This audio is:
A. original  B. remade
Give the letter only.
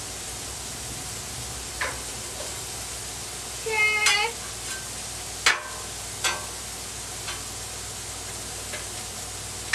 A